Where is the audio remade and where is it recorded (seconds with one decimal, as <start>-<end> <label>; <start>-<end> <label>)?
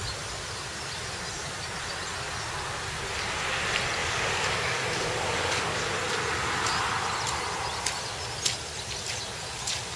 0.0-4.0 recorded; 4.0-5.8 remade; 5.8-10.0 recorded